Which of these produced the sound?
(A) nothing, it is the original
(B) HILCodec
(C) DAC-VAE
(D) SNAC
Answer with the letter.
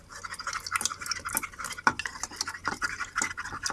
A